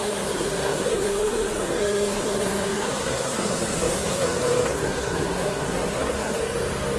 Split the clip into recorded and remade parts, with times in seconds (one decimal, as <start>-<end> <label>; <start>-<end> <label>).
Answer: 0.0-6.4 remade; 6.4-7.0 recorded